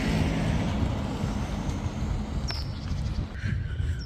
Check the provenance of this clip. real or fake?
real